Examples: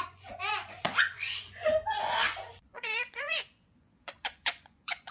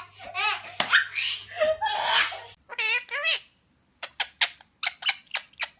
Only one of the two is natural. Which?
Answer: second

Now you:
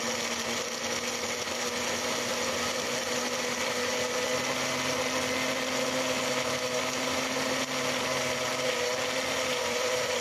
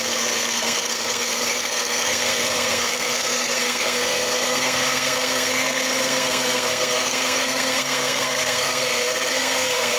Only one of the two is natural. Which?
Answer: first